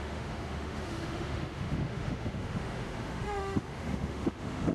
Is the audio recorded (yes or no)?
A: no